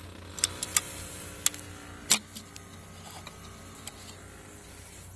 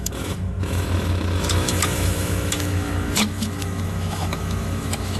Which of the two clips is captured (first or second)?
first